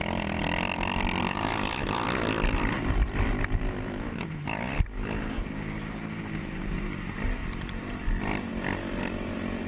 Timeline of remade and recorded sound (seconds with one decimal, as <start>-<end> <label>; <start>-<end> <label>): 0.0-1.2 recorded; 1.2-3.6 remade; 3.6-4.9 recorded; 4.9-5.5 remade; 5.5-7.4 recorded; 7.4-8.5 remade; 8.5-9.7 recorded